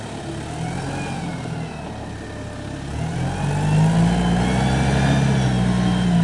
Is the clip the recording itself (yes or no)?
yes